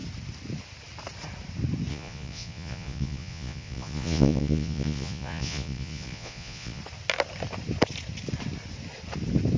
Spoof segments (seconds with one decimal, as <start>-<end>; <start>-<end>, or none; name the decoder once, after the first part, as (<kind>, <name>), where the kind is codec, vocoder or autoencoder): 1.9-6.8 (vocoder, Vocos)